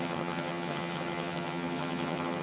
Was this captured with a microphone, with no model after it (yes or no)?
no